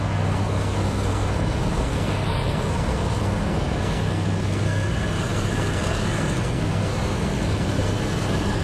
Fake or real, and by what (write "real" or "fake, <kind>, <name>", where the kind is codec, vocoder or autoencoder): fake, codec, SNAC